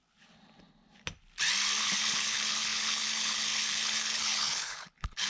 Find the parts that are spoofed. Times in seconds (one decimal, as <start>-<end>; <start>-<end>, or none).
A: 1.8-5.3